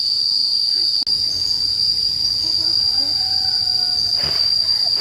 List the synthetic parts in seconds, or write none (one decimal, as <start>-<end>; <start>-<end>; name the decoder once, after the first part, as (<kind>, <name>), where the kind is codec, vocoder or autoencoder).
4.2-5.0 (vocoder, BigVGAN v2)